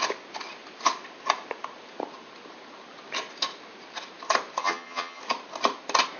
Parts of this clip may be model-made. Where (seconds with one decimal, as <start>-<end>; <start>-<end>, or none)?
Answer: 4.6-5.2